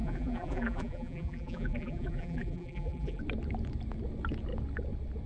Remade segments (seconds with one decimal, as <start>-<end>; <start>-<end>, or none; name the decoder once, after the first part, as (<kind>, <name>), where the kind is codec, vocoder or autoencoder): 0.0-3.2 (vocoder, BigVGAN v2)